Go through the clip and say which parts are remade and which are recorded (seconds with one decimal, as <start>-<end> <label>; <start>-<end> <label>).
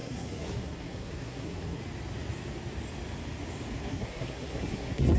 0.0-1.8 remade; 1.8-3.8 recorded; 3.8-5.2 remade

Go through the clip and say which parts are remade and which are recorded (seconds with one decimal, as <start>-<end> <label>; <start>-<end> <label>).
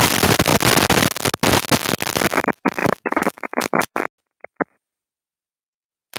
0.0-2.8 recorded; 2.8-4.0 remade; 4.0-6.2 recorded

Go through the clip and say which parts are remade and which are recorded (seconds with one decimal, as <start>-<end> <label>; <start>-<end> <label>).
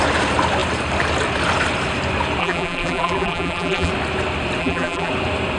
0.0-2.4 recorded; 2.4-3.9 remade; 3.9-4.6 recorded; 4.6-5.1 remade; 5.1-5.6 recorded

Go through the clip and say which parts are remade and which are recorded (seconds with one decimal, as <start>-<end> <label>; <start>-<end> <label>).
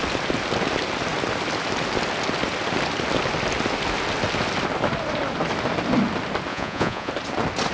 0.0-6.5 recorded; 6.5-7.1 remade; 7.1-7.7 recorded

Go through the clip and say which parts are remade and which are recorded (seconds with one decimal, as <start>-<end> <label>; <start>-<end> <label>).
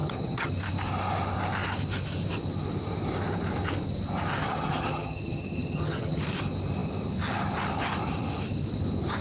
0.0-0.5 remade; 0.5-4.4 recorded; 4.4-6.2 remade; 6.2-9.2 recorded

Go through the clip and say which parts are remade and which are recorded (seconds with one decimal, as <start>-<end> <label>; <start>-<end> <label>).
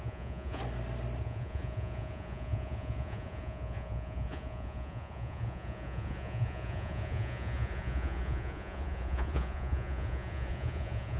0.0-0.6 remade; 0.6-1.2 recorded; 1.2-11.2 remade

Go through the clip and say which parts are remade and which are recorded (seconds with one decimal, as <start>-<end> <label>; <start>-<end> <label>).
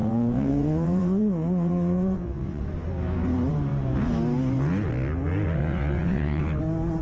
0.0-2.6 remade; 2.6-5.6 recorded; 5.6-6.4 remade; 6.4-7.0 recorded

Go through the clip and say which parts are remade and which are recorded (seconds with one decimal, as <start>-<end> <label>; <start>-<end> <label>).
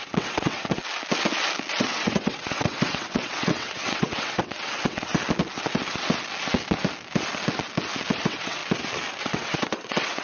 0.0-0.8 remade; 0.8-1.8 recorded; 1.8-5.1 remade; 5.1-8.2 recorded; 8.2-8.6 remade; 8.6-9.2 recorded; 9.2-10.2 remade